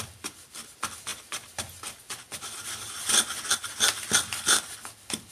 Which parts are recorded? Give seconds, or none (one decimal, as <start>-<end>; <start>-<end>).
0.0-5.3